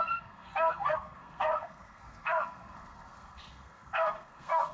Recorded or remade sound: remade